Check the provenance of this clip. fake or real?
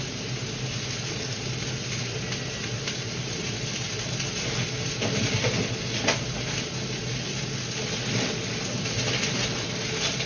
real